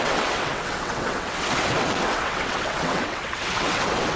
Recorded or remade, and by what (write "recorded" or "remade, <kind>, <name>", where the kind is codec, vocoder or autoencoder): remade, vocoder, WaveNeXt